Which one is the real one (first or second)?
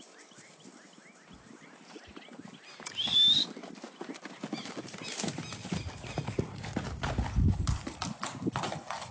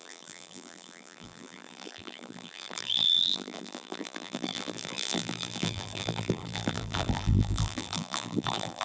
first